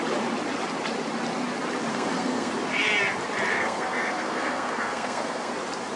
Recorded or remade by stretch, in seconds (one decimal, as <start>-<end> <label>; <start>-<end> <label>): 0.0-1.9 recorded; 1.9-2.5 remade; 2.5-3.5 recorded; 3.5-5.5 remade; 5.5-6.0 recorded